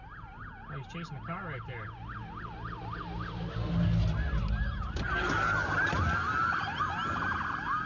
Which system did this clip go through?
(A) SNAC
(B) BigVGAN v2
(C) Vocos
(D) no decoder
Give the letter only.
D